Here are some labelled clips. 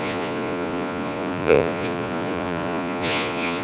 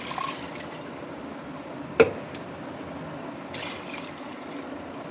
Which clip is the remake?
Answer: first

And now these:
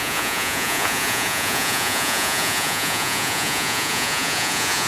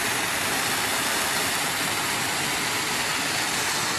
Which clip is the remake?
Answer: first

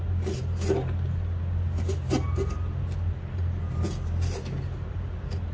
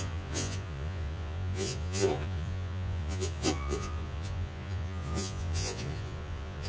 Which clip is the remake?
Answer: second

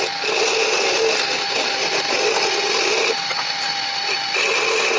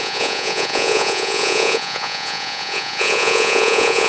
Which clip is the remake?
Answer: second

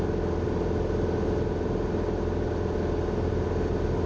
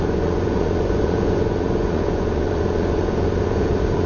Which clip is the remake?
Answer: second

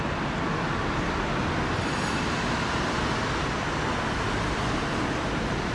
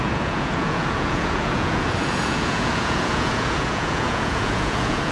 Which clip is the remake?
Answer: second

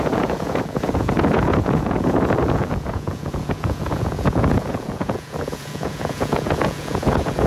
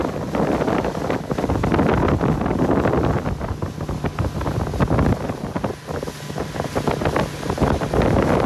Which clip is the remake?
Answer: first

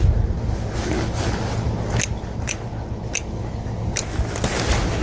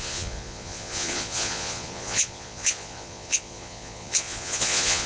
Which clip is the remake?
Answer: second